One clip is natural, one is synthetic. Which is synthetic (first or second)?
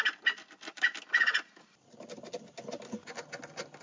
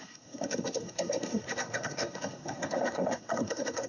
second